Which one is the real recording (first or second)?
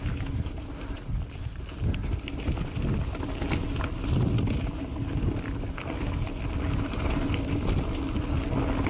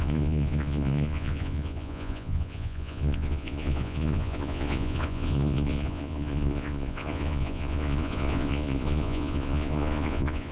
first